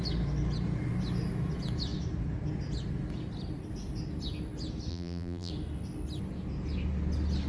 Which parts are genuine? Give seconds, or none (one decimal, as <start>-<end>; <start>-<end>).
0.0-4.9; 5.5-7.5